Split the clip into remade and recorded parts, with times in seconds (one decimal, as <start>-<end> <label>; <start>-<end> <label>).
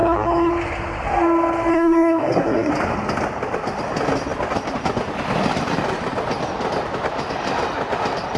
0.0-0.5 remade; 0.5-1.7 recorded; 1.7-2.7 remade; 2.7-8.4 recorded